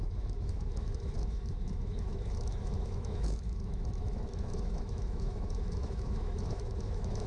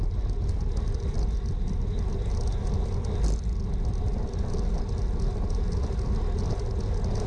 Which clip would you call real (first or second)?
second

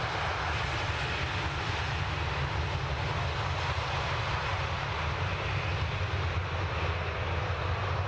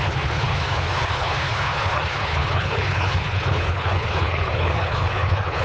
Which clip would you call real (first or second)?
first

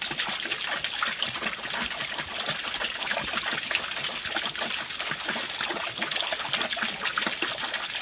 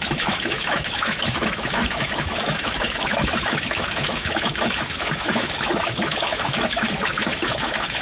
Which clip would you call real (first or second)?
first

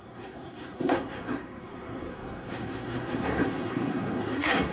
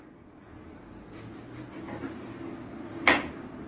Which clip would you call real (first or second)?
second